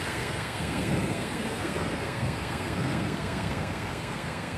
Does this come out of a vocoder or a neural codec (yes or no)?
yes